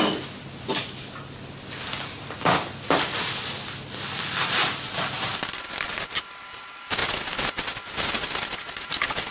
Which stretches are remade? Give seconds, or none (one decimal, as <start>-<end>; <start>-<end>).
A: none